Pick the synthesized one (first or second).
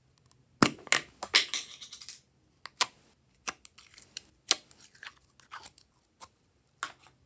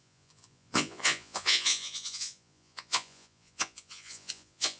second